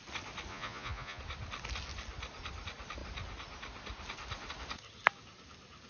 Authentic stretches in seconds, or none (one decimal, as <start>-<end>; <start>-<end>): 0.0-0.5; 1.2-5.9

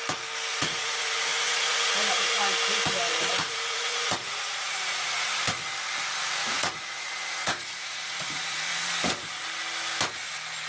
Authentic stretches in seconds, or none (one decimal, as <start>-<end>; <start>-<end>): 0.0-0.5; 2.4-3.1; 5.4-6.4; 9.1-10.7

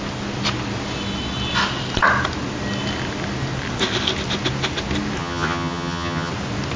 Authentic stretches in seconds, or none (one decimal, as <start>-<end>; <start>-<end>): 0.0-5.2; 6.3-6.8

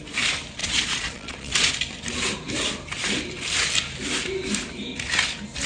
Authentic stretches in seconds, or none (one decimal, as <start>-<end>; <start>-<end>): 0.0-0.6; 1.7-5.7

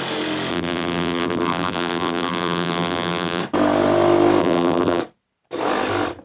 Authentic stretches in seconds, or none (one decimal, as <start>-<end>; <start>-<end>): 0.0-0.5; 3.4-4.4; 5.0-6.2